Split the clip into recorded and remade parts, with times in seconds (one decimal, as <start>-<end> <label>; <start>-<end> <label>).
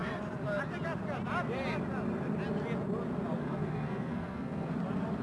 0.0-3.4 recorded; 3.4-4.7 remade; 4.7-5.2 recorded